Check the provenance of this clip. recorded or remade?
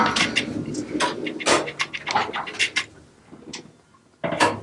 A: recorded